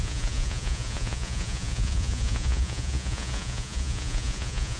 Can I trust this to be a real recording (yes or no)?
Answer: no